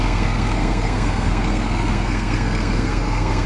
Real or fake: fake